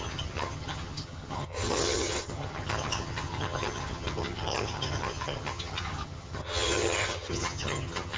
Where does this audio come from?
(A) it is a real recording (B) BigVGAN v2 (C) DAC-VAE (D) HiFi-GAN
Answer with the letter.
D